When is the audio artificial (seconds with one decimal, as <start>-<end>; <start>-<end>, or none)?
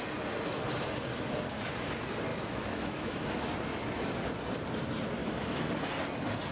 2.3-3.4; 5.2-5.7